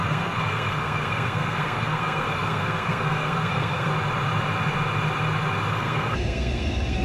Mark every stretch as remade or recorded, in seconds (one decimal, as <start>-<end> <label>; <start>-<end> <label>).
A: 0.0-3.9 remade; 3.9-5.7 recorded; 5.7-7.0 remade